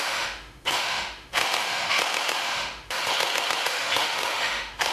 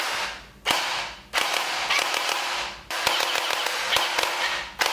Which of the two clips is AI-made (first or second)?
first